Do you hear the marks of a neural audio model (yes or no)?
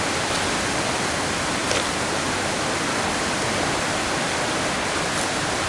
no